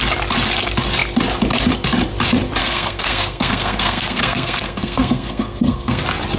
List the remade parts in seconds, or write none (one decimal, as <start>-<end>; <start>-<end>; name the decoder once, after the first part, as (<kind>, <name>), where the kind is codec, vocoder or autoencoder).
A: 2.6-6.0 (codec, SNAC)

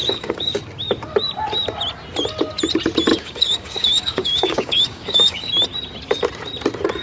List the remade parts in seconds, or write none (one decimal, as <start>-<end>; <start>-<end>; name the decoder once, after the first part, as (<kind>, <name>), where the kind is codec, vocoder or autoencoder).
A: 0.0-0.6 (codec, DAC); 3.1-5.5